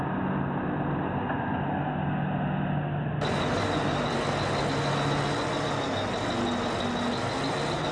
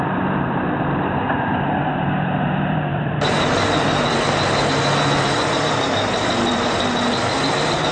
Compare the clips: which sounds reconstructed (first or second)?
second